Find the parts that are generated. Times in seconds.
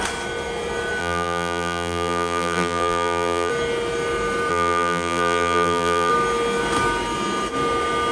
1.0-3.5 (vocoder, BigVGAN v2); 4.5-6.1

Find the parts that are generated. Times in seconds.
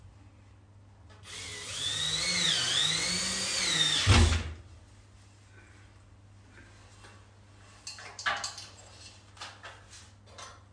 none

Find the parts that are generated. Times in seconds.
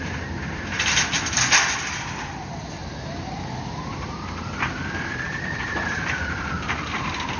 0.0-7.4 (vocoder, BigVGAN v2)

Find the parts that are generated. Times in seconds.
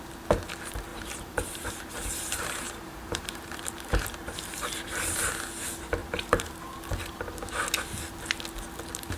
0.9-5.3 (vocoder, BigVGAN v2); 6.0-6.8